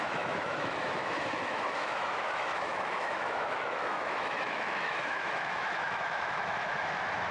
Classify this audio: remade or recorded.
remade